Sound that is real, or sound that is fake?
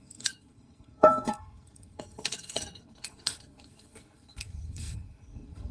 fake